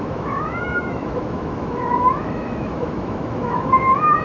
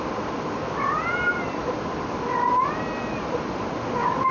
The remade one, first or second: first